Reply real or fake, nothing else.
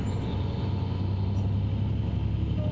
real